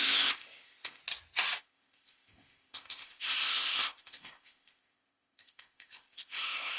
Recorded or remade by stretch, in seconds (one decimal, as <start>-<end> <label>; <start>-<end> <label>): 0.0-1.0 remade; 1.0-1.6 recorded; 1.6-6.8 remade